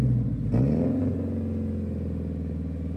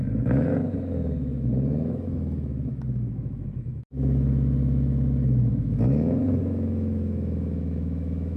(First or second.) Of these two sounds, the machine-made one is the second